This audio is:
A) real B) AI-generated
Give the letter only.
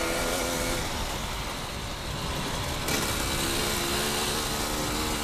A